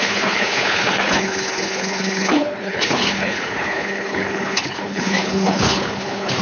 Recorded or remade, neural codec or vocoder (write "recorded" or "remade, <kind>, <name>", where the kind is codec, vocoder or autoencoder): remade, codec, HILCodec